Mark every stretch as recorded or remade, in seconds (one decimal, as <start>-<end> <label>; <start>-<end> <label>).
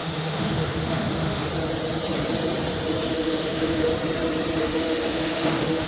0.0-1.5 remade; 1.5-3.1 recorded; 3.1-3.9 remade; 3.9-4.6 recorded; 4.6-5.9 remade